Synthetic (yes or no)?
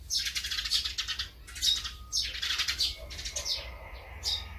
no